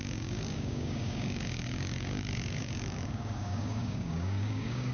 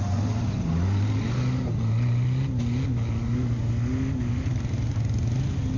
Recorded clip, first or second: second